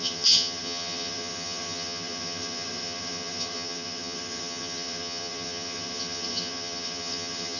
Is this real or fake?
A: fake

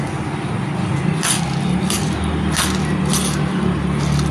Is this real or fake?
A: real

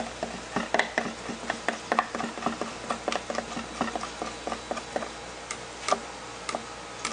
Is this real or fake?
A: real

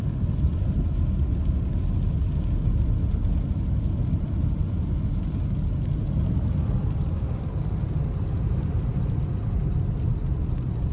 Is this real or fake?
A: real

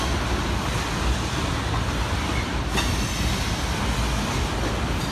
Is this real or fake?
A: real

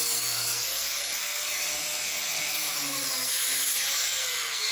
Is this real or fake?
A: fake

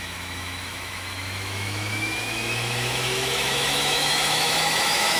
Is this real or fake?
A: fake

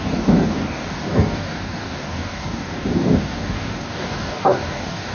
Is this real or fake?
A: fake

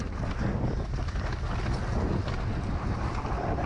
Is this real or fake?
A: real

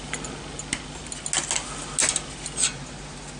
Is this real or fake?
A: real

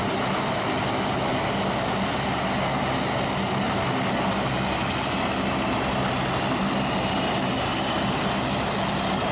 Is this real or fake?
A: real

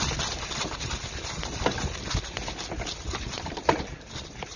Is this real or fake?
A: fake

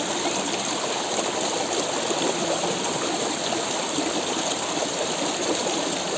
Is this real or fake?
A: real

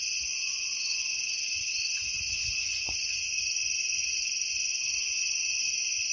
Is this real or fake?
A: fake